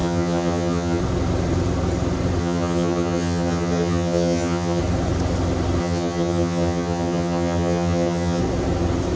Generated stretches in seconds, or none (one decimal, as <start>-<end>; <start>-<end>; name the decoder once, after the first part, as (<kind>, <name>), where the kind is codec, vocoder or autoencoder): 0.0-1.0 (vocoder, HiFi-GAN); 2.4-4.8; 5.8-8.4